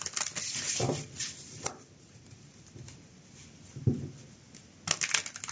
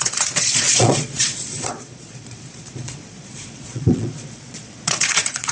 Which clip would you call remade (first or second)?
second